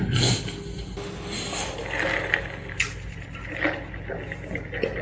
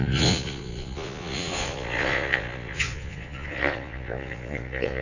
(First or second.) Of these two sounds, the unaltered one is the first